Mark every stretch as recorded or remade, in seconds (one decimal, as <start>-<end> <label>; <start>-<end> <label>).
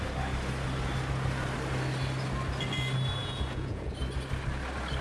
0.0-3.2 recorded; 3.2-3.9 remade; 3.9-5.0 recorded